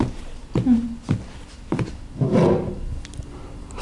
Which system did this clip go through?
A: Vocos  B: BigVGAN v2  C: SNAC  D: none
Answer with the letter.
D